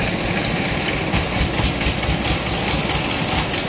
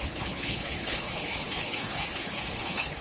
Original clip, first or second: first